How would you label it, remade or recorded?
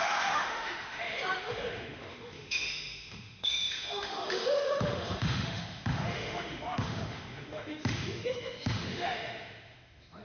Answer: remade